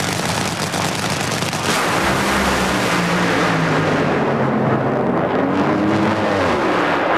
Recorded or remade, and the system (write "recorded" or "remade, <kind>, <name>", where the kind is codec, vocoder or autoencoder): recorded